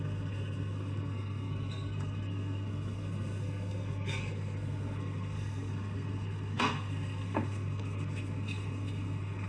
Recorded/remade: remade